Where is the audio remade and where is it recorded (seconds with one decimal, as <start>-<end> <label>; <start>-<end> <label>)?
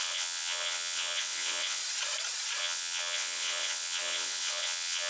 0.0-1.8 remade; 1.8-2.6 recorded; 2.6-5.1 remade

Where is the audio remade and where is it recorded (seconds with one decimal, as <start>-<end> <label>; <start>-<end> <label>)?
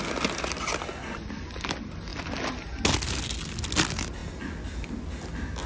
0.0-5.7 recorded